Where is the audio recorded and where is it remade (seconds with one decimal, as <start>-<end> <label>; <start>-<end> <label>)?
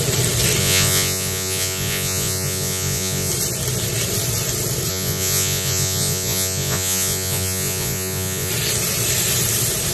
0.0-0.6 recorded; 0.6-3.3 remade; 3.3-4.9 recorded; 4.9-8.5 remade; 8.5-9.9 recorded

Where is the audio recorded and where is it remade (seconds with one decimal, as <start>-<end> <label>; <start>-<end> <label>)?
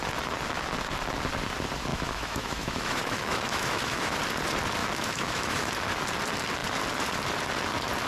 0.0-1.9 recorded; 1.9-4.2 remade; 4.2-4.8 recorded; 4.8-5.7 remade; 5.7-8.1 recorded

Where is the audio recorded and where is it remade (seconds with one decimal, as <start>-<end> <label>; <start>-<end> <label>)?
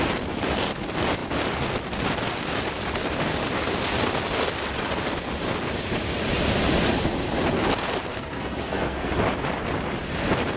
0.0-8.1 recorded; 8.1-9.1 remade; 9.1-10.6 recorded